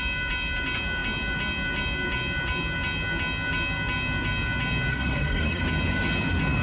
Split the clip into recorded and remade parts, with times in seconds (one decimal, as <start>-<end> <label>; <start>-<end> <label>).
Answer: 0.0-4.9 recorded; 4.9-5.6 remade; 5.6-6.6 recorded